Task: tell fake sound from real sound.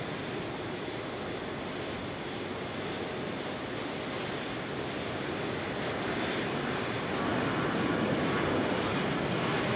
real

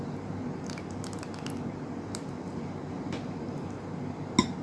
real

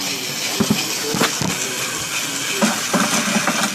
real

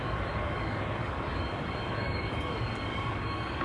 fake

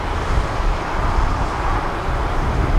real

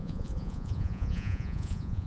fake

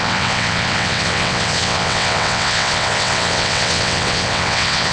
fake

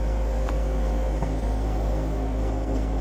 fake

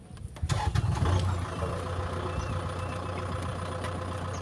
real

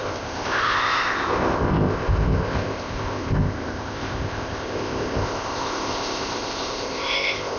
fake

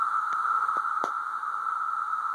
real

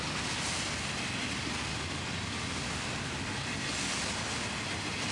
real